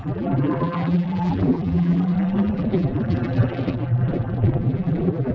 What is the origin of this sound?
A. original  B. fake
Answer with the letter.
B